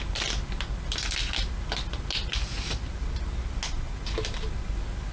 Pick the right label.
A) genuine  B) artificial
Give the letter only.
A